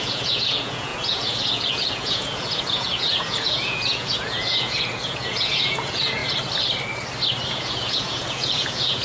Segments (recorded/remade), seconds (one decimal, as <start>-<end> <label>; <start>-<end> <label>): 0.0-6.2 remade; 6.2-7.5 recorded; 7.5-9.0 remade